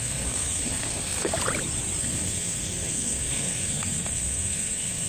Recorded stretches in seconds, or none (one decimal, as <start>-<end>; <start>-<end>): 1.3-2.0